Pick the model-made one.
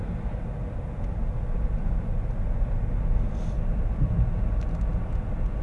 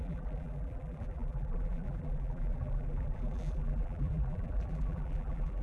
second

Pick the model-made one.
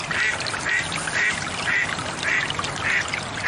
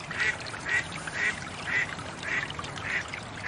second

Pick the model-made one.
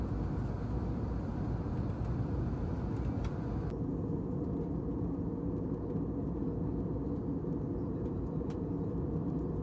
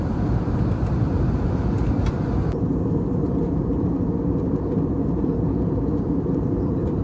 second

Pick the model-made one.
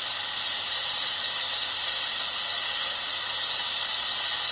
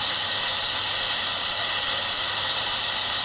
second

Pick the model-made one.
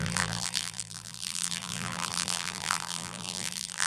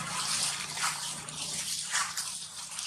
first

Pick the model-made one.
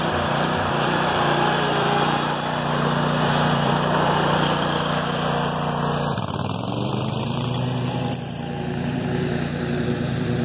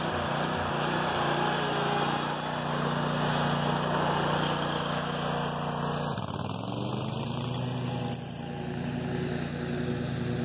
first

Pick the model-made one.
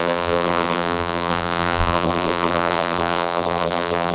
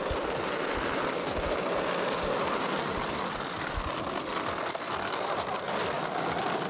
first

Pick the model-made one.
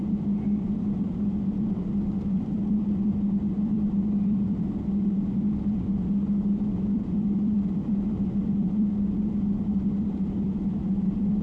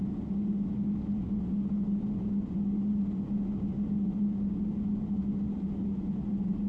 first